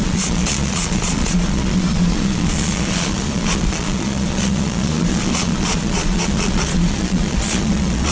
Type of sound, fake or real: fake